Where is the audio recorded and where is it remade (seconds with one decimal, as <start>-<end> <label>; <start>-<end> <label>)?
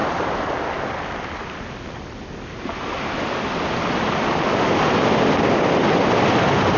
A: 0.0-6.8 recorded